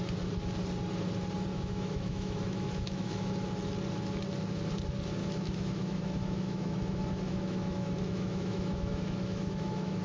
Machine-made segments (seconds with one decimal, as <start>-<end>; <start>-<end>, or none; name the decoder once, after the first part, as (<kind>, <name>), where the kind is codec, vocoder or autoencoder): 1.5-3.3 (autoencoder, DAC-VAE); 5.2-10.0